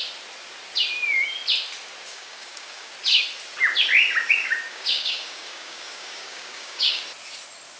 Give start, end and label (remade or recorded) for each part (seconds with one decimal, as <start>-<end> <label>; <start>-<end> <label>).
0.0-2.1 recorded; 2.1-2.9 remade; 2.9-4.7 recorded; 4.7-7.0 remade; 7.0-7.8 recorded

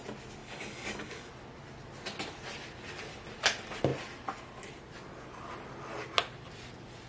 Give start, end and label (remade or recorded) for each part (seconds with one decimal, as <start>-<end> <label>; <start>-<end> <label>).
0.0-0.4 recorded; 0.4-1.3 remade; 1.3-7.1 recorded

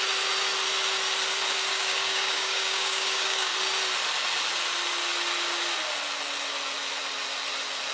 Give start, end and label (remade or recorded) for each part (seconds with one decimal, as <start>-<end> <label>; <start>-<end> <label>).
0.0-1.7 recorded; 1.7-3.5 remade; 3.5-7.9 recorded